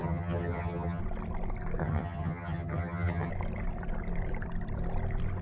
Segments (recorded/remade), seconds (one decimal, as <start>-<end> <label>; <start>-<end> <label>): 0.0-1.0 remade; 1.0-1.8 recorded; 1.8-3.3 remade; 3.3-5.4 recorded